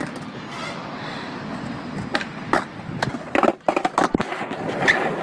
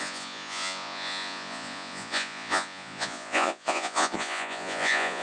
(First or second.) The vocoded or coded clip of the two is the second